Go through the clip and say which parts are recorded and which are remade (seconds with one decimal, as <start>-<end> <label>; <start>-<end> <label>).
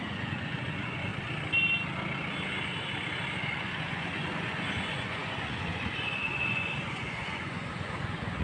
0.0-1.1 remade; 1.1-3.4 recorded; 3.4-8.4 remade